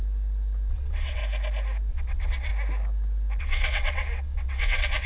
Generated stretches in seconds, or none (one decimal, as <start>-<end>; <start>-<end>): 0.7-1.2; 1.9-2.5; 3.4-5.1